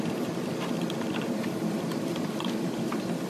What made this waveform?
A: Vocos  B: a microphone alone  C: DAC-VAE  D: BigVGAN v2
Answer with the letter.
D